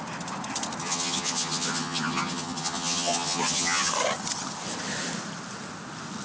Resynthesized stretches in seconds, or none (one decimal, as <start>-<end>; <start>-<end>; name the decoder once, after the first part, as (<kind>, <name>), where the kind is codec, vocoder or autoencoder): 0.8-3.9 (vocoder, HiFi-GAN)